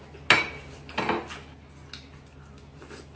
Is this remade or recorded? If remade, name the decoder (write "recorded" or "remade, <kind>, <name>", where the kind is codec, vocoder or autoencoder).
recorded